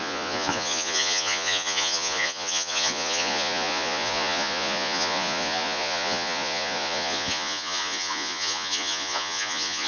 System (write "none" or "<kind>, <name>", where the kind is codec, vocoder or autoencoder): vocoder, Vocos